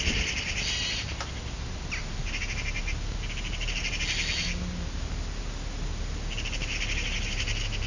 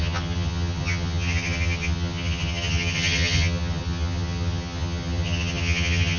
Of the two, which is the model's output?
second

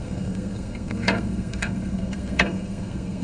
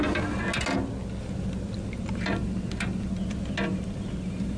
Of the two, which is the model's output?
first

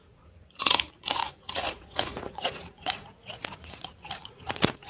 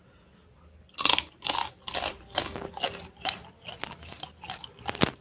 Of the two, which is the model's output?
first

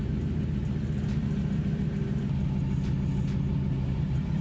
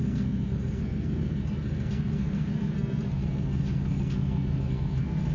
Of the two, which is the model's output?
second